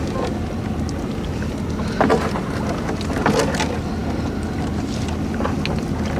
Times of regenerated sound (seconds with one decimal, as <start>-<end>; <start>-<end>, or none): none